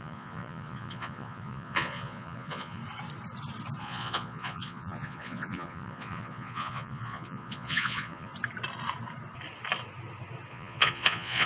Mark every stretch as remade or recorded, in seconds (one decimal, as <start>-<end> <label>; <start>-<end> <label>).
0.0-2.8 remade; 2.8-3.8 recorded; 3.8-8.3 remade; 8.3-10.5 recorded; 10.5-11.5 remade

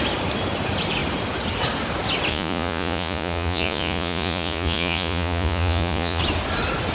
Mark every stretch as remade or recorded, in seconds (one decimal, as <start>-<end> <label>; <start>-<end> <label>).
0.0-2.3 recorded; 2.3-6.2 remade; 6.2-6.9 recorded

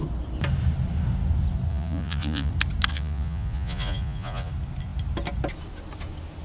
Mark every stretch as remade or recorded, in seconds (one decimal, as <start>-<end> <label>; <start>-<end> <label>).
0.0-1.7 recorded; 1.7-2.5 remade; 2.5-2.9 recorded; 2.9-4.5 remade; 4.5-6.4 recorded

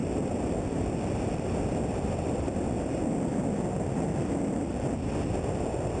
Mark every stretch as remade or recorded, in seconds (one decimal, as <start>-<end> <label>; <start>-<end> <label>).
0.0-6.0 recorded

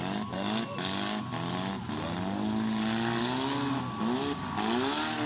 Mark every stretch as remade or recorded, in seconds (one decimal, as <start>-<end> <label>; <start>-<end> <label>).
0.0-5.3 recorded

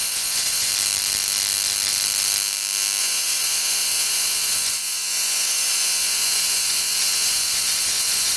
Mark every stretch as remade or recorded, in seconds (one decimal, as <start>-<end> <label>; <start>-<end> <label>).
0.0-0.7 remade; 0.7-3.0 recorded; 3.0-8.4 remade

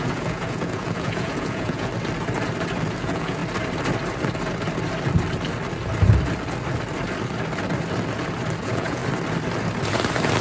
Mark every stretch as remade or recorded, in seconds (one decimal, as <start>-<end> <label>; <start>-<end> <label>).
0.0-1.9 remade; 1.9-2.9 recorded; 2.9-3.4 remade; 3.4-8.6 recorded; 8.6-9.0 remade; 9.0-10.4 recorded